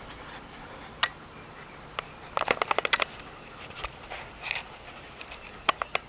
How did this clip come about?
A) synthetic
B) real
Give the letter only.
B